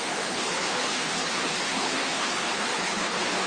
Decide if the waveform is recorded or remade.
remade